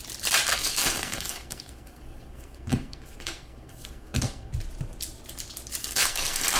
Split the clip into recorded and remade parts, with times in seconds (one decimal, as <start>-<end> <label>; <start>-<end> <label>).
0.0-0.5 recorded; 0.5-4.5 remade; 4.5-5.8 recorded; 5.8-6.6 remade